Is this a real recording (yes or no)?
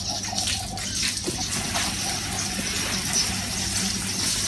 yes